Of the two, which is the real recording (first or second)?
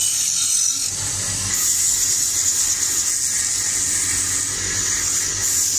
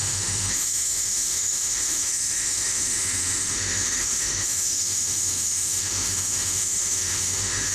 first